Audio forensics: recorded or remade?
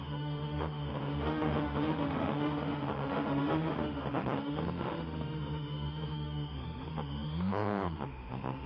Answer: remade